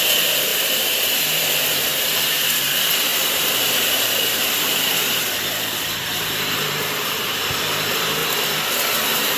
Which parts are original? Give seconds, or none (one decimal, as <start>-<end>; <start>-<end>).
8.2-8.7